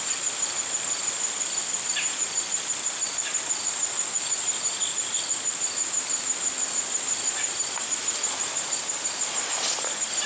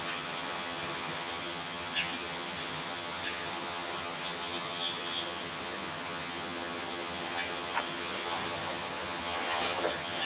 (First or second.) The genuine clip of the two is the first